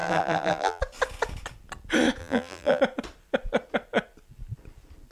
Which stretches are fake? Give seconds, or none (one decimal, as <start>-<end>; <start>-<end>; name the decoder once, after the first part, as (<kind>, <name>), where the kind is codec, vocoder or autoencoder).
0.0-0.8 (vocoder, BigVGAN v2); 2.2-2.8